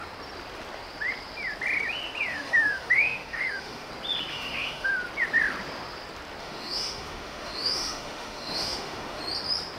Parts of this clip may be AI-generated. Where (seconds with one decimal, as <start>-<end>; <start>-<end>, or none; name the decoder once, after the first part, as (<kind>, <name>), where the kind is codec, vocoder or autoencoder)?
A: 2.3-3.9 (autoencoder, DAC-VAE); 4.3-4.9; 6.4-9.2